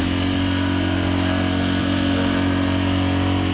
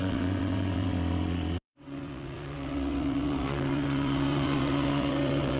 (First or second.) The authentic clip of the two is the first